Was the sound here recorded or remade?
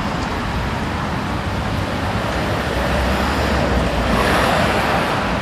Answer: remade